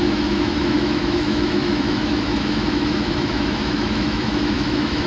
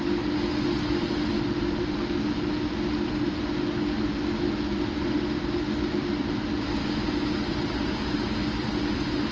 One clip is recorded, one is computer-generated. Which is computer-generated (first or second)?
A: first